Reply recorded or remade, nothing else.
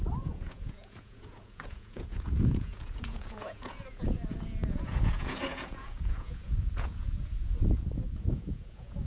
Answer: remade